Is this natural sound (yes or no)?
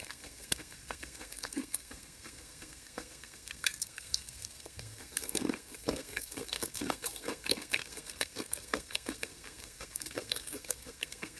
no